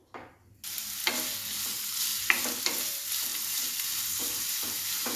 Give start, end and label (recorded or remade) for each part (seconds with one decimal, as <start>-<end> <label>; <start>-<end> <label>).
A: 0.0-3.3 recorded; 3.3-5.2 remade